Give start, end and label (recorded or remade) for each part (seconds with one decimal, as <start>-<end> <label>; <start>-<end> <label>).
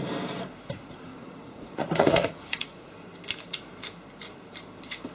0.0-1.1 recorded; 1.1-2.9 remade; 2.9-5.1 recorded